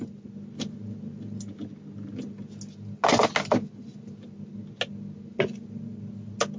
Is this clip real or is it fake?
real